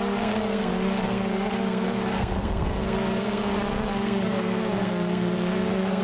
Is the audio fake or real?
fake